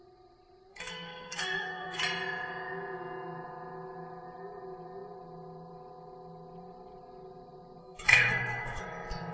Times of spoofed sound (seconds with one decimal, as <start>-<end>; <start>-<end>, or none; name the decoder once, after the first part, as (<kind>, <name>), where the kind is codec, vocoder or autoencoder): 0.7-2.0 (codec, SNAC); 7.8-8.8

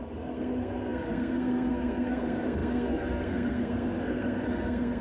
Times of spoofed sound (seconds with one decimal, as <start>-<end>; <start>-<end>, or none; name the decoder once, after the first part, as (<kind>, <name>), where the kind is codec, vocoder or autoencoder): 0.0-5.0 (codec, SNAC)

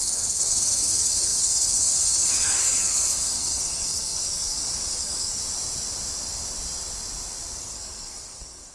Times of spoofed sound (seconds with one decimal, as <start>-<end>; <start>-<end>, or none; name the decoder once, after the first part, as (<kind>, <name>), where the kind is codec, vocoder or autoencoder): 0.0-5.4 (codec, SNAC); 7.6-8.7

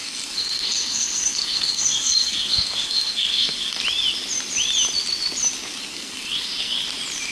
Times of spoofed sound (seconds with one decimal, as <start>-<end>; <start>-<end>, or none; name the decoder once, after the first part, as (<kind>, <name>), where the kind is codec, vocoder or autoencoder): 0.0-3.8 (codec, SNAC); 5.9-6.8